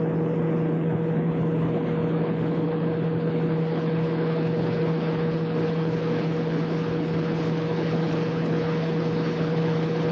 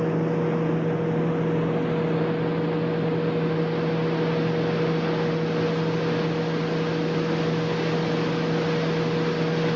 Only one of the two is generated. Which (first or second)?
first